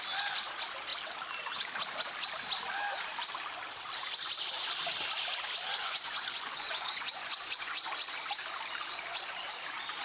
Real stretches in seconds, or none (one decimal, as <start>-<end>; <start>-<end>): 0.0-5.8; 7.9-10.0

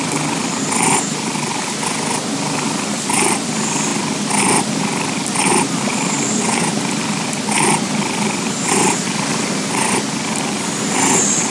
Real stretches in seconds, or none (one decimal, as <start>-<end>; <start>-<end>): 0.0-11.5

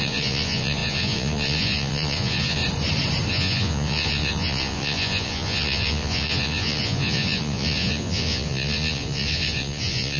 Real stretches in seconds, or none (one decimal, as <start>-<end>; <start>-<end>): 2.6-3.3

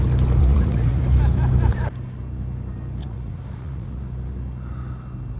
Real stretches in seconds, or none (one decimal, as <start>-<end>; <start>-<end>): 0.0-0.4; 1.0-3.0; 4.0-5.4

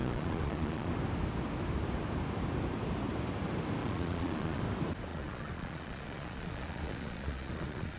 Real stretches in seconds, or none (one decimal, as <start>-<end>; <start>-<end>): 0.9-3.8; 4.6-5.1

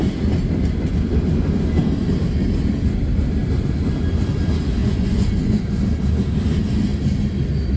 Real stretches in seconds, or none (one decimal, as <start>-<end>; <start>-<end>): 0.0-4.8; 5.8-7.8